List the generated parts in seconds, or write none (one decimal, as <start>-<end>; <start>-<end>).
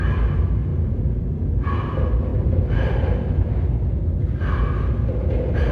0.7-1.2